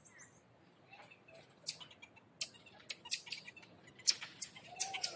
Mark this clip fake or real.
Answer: real